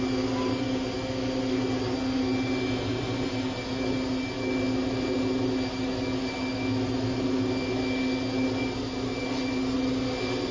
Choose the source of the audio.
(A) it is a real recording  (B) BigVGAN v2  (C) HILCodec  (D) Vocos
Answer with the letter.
A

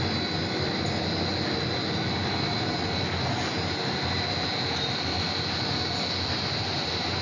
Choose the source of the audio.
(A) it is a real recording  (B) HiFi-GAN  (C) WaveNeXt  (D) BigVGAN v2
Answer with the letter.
A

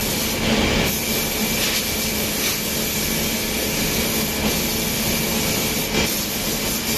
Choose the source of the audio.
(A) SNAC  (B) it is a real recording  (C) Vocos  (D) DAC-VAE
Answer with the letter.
B